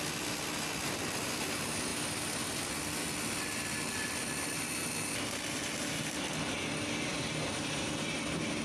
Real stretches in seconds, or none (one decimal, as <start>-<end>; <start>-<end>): 0.0-8.6

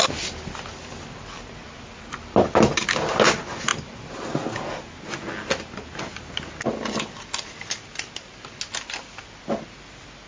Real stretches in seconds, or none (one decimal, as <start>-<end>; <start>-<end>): 0.0-10.3

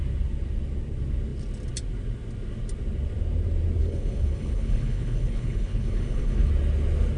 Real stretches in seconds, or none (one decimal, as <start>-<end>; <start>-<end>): 0.0-3.8; 6.5-7.2

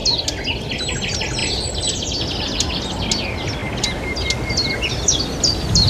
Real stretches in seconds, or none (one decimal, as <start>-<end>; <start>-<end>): 0.0-5.9

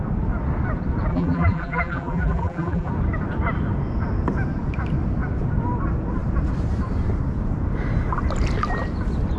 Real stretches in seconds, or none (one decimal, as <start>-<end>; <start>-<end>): 0.0-1.1; 2.9-9.4

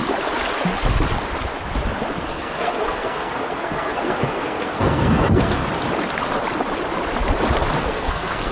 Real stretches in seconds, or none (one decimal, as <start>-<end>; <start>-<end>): 0.0-2.2; 5.6-7.8

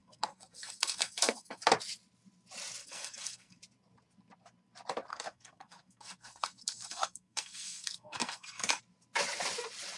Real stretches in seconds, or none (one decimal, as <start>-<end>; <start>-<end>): 1.6-2.8; 3.6-5.1; 8.8-10.0

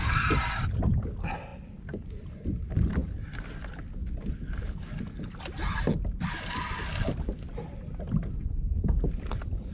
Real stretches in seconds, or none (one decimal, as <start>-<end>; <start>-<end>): 0.0-8.3; 8.8-9.7